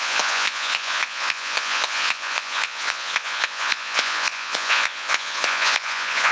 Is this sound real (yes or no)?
no